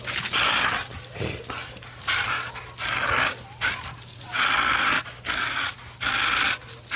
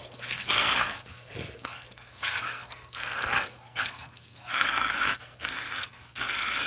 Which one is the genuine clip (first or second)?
first